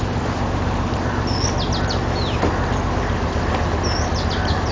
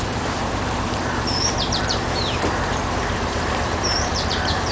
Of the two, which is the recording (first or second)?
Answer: first